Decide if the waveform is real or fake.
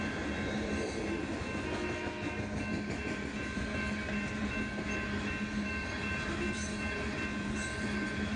real